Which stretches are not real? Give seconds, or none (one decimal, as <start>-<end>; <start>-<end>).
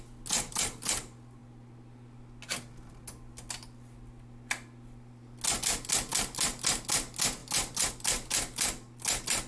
none